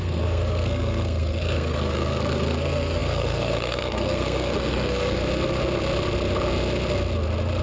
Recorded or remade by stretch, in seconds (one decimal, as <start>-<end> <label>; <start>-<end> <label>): 0.0-5.2 remade; 5.2-7.6 recorded